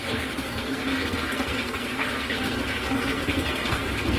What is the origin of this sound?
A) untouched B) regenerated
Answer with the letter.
B